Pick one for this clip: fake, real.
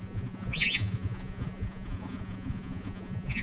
fake